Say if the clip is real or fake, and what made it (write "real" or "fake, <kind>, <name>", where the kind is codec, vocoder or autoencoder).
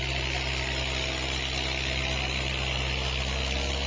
real